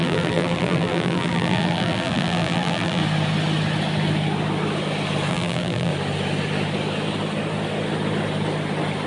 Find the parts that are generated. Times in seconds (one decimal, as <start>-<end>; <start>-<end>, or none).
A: 0.0-3.0; 5.3-5.9